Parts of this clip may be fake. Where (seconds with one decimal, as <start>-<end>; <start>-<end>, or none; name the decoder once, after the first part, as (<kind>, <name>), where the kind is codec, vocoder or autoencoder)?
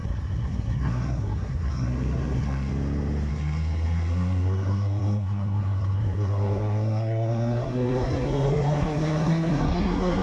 0.0-2.7 (codec, SNAC); 3.3-10.2